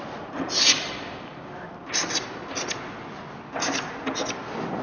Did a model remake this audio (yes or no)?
no